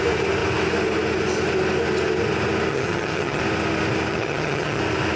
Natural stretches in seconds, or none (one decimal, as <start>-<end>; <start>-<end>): 0.0-2.7; 3.4-4.1; 4.8-5.2